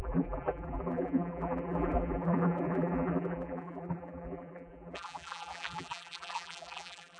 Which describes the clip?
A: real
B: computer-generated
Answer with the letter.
B